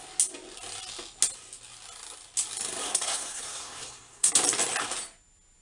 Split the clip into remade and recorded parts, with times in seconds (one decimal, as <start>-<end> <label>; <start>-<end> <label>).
0.0-2.8 recorded; 2.8-4.3 remade; 4.3-5.6 recorded